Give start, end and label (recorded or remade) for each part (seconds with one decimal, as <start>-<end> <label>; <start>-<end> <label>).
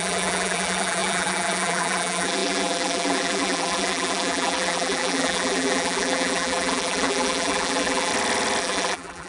0.0-8.1 remade; 8.1-8.6 recorded; 8.6-9.3 remade